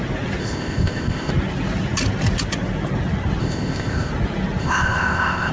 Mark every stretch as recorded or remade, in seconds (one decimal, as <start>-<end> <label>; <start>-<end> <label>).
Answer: 0.0-0.4 recorded; 0.4-1.3 remade; 1.3-3.4 recorded; 3.4-4.1 remade; 4.1-4.6 recorded; 4.6-5.5 remade

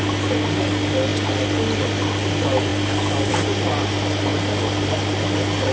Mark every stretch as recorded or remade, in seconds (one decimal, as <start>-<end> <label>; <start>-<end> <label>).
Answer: 0.0-5.7 recorded

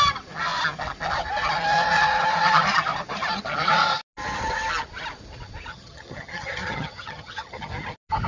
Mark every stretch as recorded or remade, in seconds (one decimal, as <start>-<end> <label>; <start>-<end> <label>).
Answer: 0.0-5.7 recorded; 5.7-7.7 remade; 7.7-8.3 recorded